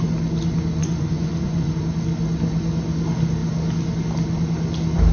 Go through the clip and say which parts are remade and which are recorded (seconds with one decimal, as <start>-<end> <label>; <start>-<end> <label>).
0.0-0.8 recorded; 0.8-1.8 remade; 1.8-5.1 recorded